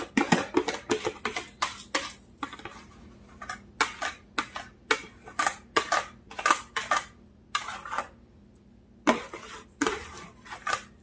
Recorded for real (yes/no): yes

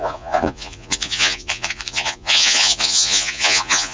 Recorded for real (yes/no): no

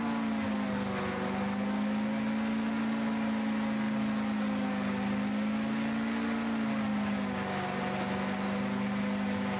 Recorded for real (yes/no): yes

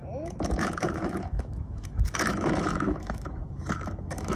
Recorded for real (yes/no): no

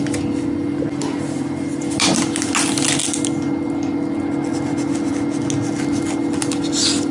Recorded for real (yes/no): yes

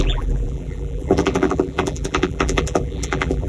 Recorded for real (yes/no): no